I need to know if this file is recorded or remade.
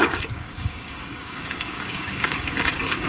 remade